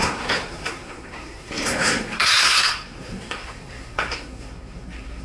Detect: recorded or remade remade